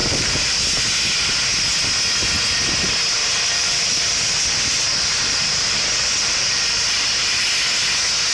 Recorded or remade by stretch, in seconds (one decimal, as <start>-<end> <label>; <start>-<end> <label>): 0.0-0.6 remade; 0.6-3.2 recorded; 3.2-7.5 remade; 7.5-8.3 recorded